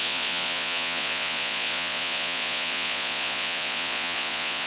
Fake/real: fake